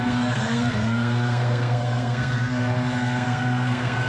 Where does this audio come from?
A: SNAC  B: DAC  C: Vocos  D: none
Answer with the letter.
A